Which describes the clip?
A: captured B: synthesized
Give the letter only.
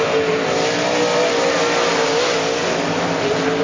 A